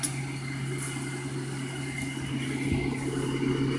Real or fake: real